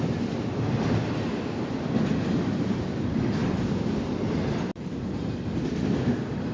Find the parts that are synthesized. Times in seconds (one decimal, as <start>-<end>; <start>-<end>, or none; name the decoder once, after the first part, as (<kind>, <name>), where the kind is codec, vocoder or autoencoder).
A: 0.0-6.5 (vocoder, BigVGAN v2)